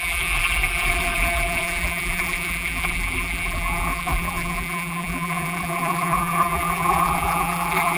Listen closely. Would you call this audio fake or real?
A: fake